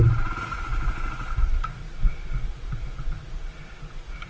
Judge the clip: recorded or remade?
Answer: remade